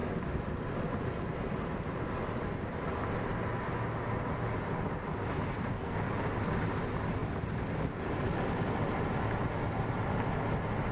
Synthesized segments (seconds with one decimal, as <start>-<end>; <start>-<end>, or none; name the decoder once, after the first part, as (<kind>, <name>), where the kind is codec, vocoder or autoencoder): 5.6-6.1 (codec, SNAC)